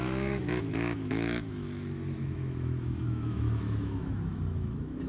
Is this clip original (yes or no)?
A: no